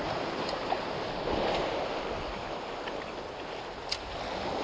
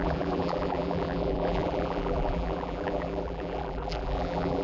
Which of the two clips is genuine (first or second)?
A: first